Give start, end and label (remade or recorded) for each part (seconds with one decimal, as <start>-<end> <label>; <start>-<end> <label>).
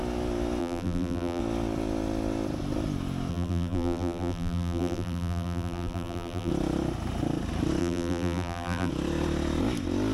0.0-0.6 recorded; 0.6-1.4 remade; 1.4-3.3 recorded; 3.3-6.5 remade; 6.5-7.8 recorded; 7.8-8.9 remade; 8.9-10.1 recorded